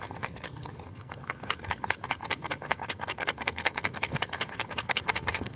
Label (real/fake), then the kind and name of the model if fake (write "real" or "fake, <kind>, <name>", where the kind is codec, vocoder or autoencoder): fake, codec, SNAC